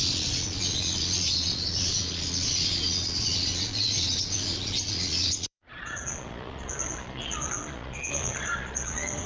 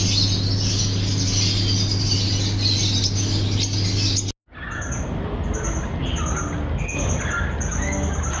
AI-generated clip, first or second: first